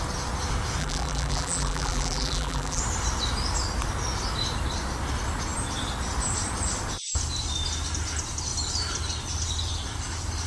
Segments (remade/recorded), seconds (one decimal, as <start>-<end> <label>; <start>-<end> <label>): 0.0-0.8 recorded; 0.8-2.8 remade; 2.8-10.5 recorded